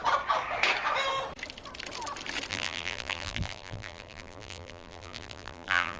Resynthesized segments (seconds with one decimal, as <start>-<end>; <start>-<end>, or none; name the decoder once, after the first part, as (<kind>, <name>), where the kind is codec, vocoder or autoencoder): 2.5-6.0 (vocoder, BigVGAN v2)